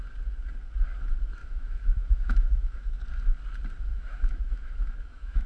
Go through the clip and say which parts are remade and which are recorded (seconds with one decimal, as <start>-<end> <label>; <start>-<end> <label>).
0.0-1.4 recorded; 1.4-3.0 remade; 3.0-3.9 recorded; 3.9-5.5 remade